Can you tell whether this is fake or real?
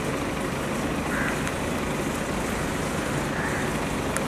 real